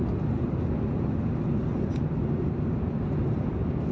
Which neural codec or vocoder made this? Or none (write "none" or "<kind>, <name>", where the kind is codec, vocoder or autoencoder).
none